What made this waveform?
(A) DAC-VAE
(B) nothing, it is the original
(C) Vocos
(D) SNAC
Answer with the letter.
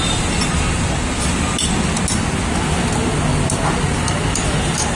B